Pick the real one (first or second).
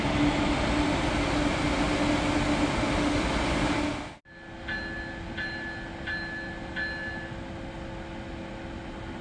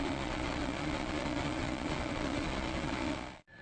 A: first